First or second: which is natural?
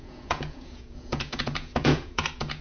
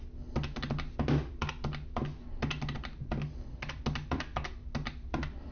second